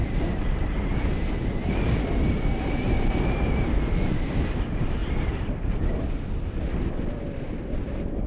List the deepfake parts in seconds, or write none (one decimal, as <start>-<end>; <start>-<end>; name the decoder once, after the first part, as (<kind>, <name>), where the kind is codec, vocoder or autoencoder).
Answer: none